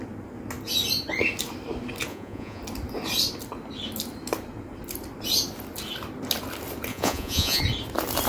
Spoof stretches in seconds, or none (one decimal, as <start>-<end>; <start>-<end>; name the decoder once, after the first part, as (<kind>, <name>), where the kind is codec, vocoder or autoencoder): 2.1-2.6 (vocoder, Vocos); 6.9-7.6